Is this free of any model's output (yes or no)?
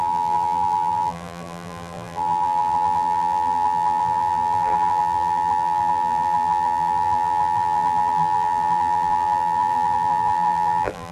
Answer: no